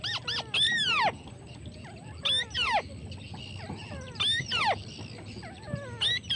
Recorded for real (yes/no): yes